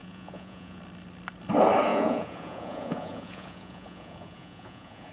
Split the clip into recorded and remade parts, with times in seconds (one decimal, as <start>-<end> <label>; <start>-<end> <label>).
0.0-0.8 remade; 0.8-1.9 recorded; 1.9-5.1 remade